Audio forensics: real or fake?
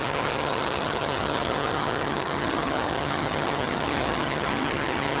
fake